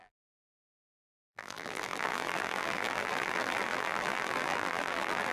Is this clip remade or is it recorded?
remade